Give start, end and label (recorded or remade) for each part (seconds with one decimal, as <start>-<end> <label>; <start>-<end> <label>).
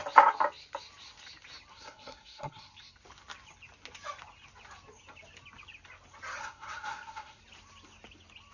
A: 0.0-1.7 recorded; 1.7-2.7 remade; 2.7-6.4 recorded; 6.4-7.4 remade; 7.4-8.5 recorded